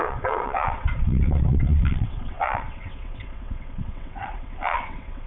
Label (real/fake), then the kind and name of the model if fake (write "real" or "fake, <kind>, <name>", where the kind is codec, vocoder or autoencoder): fake, vocoder, WaveNeXt